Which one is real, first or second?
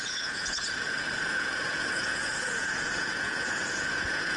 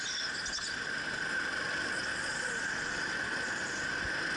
second